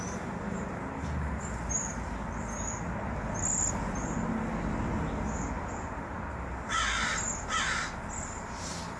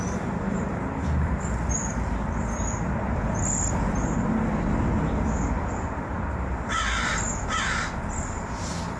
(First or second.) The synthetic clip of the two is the second